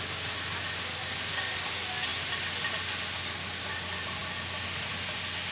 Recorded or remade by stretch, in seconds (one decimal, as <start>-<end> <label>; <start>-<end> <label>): 0.0-5.5 recorded